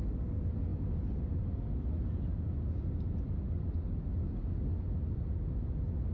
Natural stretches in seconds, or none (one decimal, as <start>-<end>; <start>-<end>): 0.0-6.1